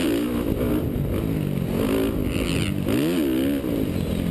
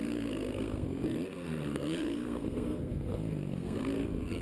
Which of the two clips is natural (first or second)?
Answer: first